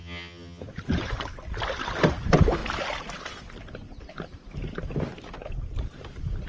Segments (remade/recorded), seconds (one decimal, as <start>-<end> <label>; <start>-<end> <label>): 0.0-0.6 remade; 0.6-6.5 recorded